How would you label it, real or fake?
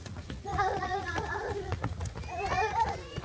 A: fake